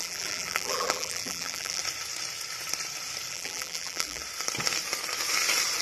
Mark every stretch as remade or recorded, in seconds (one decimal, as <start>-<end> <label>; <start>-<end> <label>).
0.0-1.8 remade; 1.8-3.3 recorded; 3.3-4.2 remade; 4.2-5.8 recorded